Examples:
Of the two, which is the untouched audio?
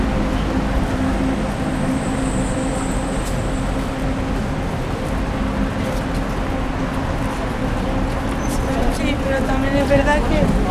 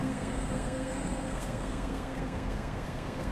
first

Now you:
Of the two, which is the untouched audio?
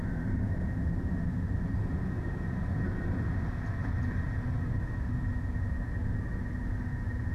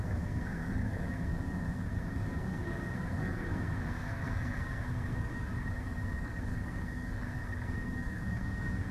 first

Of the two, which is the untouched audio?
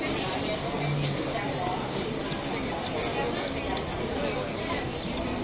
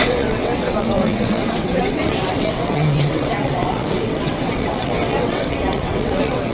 first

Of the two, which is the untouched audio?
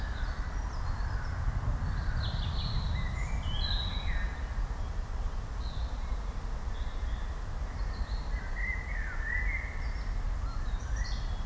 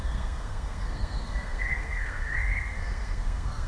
first